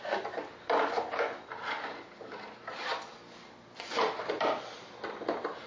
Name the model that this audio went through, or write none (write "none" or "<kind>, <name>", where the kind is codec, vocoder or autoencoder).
none